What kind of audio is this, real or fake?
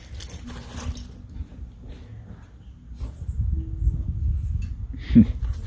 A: real